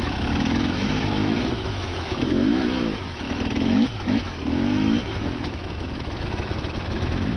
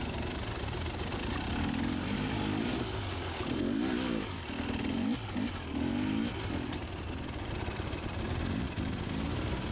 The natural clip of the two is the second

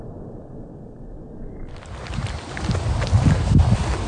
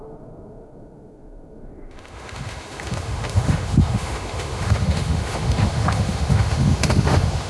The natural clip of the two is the first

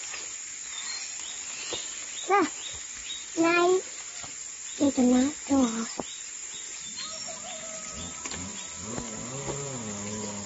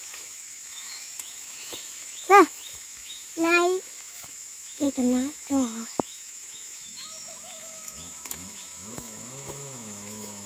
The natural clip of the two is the first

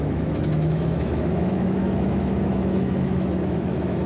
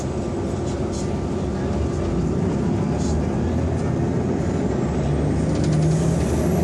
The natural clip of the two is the second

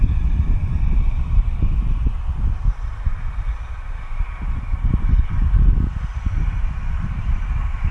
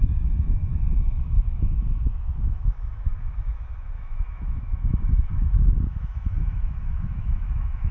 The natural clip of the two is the first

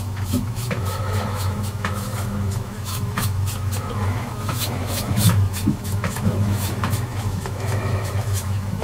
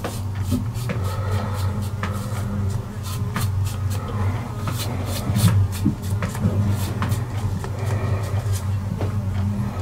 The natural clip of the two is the second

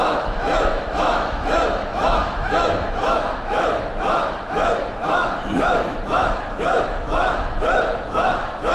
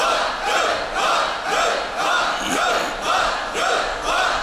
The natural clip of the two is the second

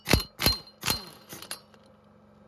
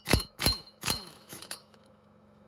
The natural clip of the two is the first